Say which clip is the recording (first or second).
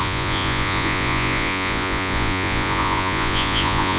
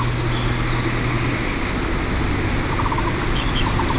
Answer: second